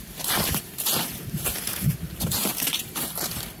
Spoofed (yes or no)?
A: yes